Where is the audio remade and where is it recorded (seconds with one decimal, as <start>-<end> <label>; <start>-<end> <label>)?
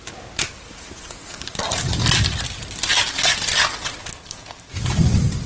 0.0-4.1 recorded; 4.1-4.7 remade; 4.7-5.5 recorded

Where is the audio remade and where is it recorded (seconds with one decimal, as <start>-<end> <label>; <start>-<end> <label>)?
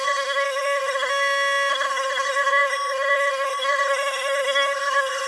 0.0-1.1 remade; 1.1-1.7 recorded; 1.7-5.3 remade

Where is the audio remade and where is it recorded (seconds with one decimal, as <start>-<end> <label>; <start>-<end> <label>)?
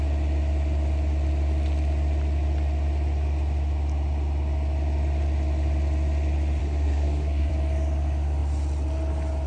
0.0-6.6 recorded; 6.6-7.5 remade; 7.5-9.5 recorded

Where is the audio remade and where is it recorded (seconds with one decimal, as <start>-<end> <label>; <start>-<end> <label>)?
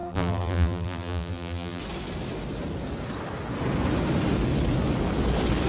0.0-1.8 remade; 1.8-5.7 recorded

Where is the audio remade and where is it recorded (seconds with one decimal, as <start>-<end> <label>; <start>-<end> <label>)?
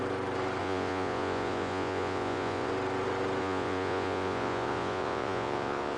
0.0-0.6 recorded; 0.6-2.7 remade; 2.7-3.4 recorded; 3.4-6.0 remade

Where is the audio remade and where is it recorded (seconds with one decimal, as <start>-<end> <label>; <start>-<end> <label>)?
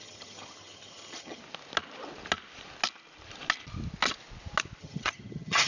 0.0-1.4 remade; 1.4-4.8 recorded; 4.8-5.7 remade